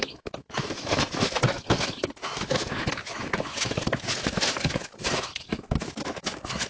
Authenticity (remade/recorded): remade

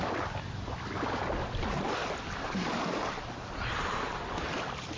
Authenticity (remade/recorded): recorded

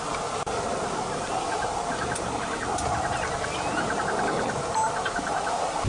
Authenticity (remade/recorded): recorded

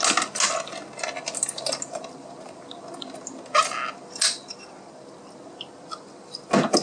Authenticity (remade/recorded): recorded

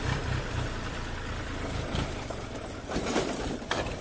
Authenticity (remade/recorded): remade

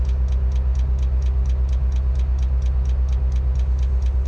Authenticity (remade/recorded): recorded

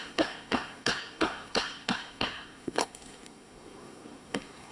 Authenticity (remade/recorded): remade